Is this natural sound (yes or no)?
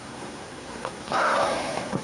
no